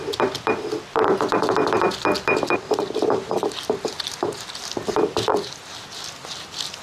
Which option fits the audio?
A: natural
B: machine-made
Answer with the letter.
A